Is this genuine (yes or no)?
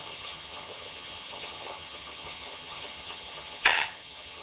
no